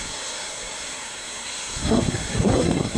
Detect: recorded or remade remade